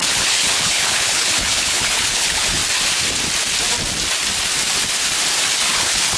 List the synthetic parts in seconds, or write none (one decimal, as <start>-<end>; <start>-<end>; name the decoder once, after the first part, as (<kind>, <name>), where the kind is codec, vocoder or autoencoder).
0.0-2.6 (codec, HILCodec); 5.6-6.2

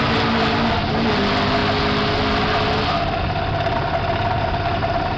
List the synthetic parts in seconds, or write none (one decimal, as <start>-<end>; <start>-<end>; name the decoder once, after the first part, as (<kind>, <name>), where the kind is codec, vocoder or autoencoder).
none

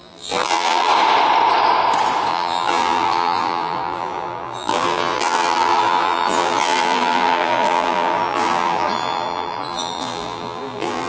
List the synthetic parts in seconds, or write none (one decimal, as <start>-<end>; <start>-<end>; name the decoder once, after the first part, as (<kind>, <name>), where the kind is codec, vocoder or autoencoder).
0.0-0.9 (vocoder, BigVGAN v2); 2.3-11.1

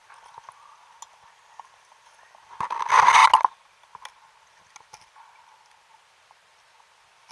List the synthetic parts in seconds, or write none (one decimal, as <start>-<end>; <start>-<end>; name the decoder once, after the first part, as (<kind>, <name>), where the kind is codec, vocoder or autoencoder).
none